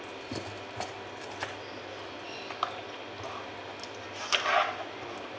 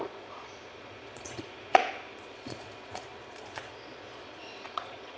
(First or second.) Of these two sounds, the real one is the first